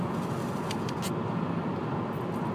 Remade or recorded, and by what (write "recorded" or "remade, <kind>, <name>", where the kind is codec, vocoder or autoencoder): recorded